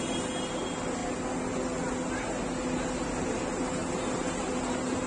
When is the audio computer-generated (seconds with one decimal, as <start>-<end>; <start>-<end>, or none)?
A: none